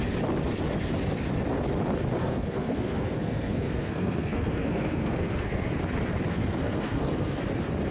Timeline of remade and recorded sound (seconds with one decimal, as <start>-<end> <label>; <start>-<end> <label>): 0.0-2.2 recorded; 2.2-5.7 remade; 5.7-6.3 recorded; 6.3-7.4 remade; 7.4-7.9 recorded